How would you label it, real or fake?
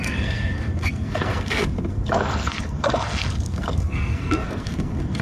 fake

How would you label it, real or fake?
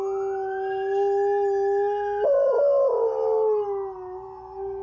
real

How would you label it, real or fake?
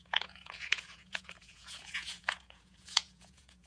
fake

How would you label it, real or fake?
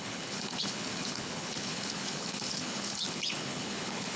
fake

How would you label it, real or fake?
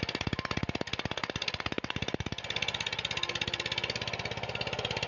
real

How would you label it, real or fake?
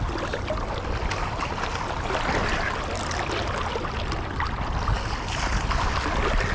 real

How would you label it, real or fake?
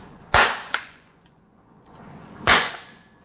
fake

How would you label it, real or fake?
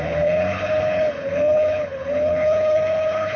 fake